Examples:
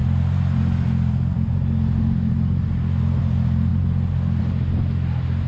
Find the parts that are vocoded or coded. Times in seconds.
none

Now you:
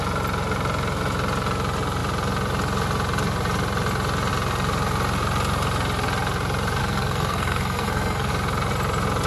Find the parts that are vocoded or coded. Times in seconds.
6.8-8.3

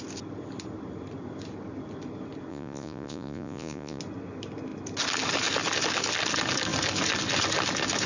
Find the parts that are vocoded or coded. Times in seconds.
2.5-4.0